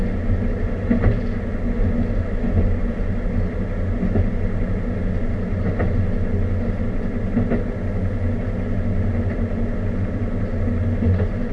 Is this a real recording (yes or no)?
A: yes